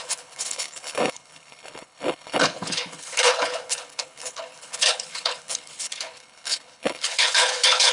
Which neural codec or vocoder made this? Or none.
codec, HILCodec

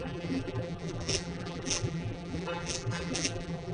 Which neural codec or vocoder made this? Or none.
vocoder, BigVGAN v2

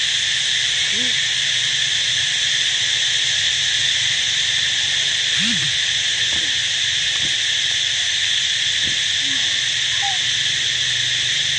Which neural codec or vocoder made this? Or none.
none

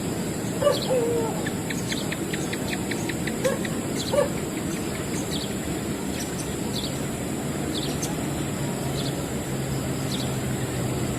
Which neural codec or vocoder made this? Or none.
none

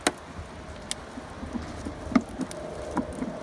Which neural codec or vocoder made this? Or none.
none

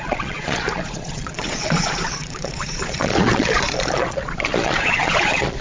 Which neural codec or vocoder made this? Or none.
vocoder, Vocos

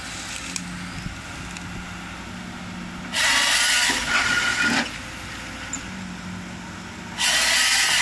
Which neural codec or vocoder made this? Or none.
none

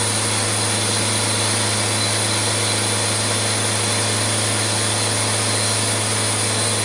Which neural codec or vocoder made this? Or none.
none